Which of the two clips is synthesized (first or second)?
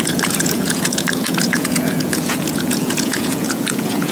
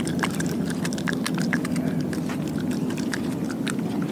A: first